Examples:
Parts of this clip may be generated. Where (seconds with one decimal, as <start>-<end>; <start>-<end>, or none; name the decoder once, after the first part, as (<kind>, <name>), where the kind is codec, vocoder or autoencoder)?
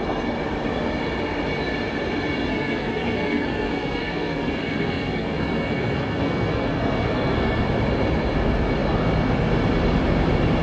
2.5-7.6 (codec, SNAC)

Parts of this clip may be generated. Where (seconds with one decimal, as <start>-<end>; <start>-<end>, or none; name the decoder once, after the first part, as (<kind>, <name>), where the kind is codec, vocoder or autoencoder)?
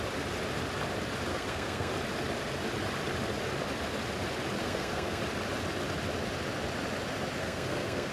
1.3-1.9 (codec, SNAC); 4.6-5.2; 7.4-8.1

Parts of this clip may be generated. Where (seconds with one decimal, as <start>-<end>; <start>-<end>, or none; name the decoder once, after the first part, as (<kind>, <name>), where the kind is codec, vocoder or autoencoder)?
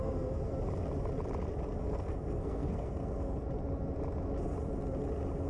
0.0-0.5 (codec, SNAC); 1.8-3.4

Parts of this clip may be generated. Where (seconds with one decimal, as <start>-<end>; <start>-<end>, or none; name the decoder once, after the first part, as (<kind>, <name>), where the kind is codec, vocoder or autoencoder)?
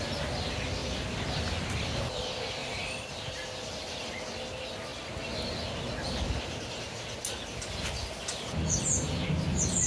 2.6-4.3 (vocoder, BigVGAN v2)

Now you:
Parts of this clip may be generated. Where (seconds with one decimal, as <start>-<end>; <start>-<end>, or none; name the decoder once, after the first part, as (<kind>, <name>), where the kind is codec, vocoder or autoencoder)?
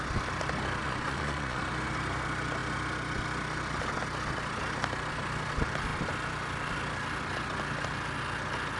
0.8-1.6 (vocoder, Vocos)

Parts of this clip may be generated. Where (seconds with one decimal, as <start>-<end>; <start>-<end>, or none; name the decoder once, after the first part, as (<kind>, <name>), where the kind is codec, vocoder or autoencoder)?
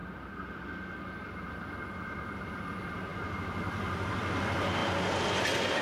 none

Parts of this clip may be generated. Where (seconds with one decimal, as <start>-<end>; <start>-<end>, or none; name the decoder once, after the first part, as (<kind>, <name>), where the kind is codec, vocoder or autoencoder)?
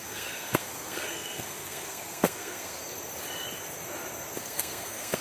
0.0-2.8 (codec, SNAC); 4.4-5.2